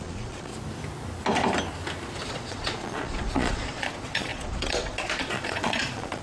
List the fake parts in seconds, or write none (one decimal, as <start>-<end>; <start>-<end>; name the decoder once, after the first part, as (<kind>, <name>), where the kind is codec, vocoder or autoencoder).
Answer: 0.0-0.5 (vocoder, Vocos); 2.3-6.2